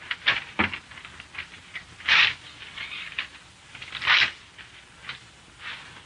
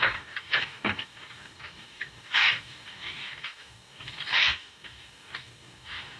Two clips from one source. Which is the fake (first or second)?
second